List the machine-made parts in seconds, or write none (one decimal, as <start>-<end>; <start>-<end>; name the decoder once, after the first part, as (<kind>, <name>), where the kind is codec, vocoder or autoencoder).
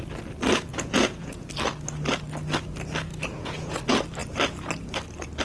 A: 0.7-1.5 (vocoder, Vocos); 3.1-3.8